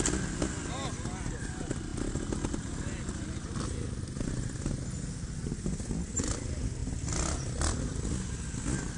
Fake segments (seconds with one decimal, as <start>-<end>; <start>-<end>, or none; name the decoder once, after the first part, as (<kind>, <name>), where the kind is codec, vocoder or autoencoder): none